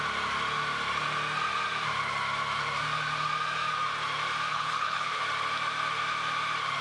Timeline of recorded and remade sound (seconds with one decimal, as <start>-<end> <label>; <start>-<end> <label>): 0.0-4.5 recorded; 4.5-5.2 remade; 5.2-6.8 recorded